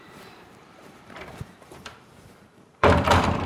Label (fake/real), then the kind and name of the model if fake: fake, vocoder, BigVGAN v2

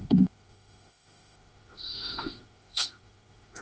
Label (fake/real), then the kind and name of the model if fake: fake, autoencoder, DAC-VAE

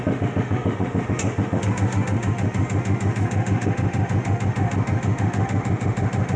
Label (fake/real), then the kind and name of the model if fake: fake, autoencoder, DAC-VAE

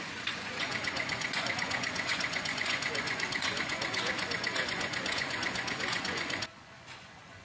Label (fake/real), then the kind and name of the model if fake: fake, vocoder, Vocos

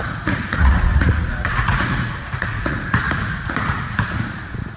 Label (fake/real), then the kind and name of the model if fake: fake, vocoder, Vocos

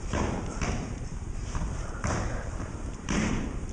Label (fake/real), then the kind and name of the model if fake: fake, vocoder, BigVGAN v2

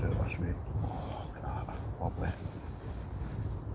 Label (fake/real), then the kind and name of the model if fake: real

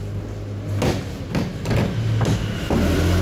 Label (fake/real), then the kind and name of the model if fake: real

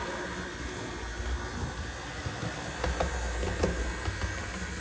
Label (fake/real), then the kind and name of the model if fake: real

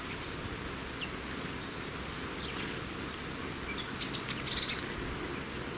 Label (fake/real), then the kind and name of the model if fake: real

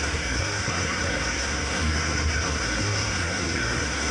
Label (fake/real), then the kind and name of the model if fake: fake, codec, SNAC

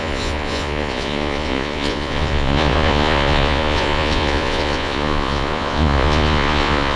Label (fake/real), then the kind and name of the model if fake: fake, vocoder, Vocos